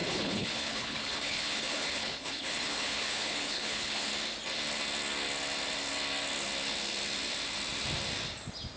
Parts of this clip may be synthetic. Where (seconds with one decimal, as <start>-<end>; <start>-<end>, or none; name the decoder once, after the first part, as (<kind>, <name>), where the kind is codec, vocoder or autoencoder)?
0.0-4.1 (codec, HILCodec)

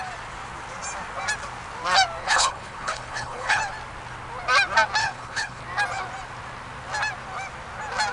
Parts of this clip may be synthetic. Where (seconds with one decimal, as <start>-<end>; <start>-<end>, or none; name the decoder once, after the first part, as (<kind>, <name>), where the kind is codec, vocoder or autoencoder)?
2.2-3.6 (codec, HILCodec); 5.0-5.6

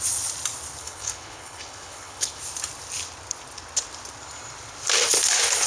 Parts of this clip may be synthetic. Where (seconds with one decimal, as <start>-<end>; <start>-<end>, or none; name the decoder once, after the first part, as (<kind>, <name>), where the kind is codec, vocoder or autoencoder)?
0.8-2.4 (codec, HILCodec)

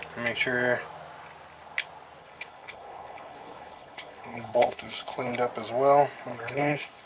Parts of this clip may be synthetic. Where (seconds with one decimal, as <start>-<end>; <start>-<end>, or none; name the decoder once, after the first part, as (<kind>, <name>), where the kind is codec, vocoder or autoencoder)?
2.2-5.3 (codec, HILCodec); 6.3-7.1

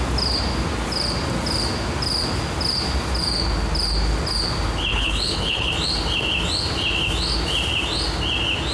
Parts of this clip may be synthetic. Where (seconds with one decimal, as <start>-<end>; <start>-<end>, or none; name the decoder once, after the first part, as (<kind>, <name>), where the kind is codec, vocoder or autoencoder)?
4.9-5.7 (codec, HILCodec)